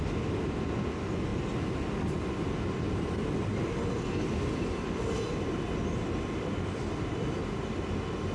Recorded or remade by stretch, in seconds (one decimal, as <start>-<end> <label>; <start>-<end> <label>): 0.0-8.3 recorded